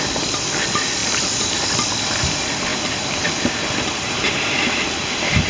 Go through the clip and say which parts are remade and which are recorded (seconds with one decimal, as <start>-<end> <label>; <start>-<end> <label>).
0.0-2.7 remade; 2.7-4.3 recorded; 4.3-5.5 remade